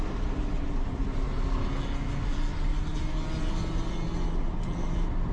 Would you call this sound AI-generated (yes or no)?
no